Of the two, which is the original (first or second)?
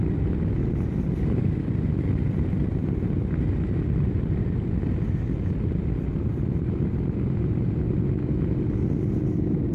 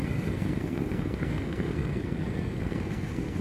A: first